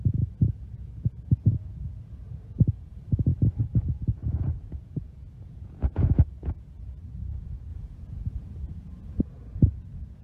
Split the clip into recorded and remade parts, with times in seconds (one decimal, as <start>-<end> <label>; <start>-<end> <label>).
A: 0.0-2.9 remade; 2.9-3.6 recorded; 3.6-10.2 remade